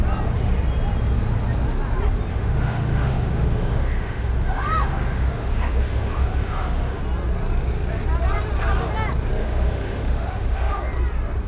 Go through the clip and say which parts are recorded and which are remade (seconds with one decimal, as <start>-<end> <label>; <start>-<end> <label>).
0.0-2.3 recorded; 2.3-7.0 remade; 7.0-9.4 recorded; 9.4-10.8 remade; 10.8-11.5 recorded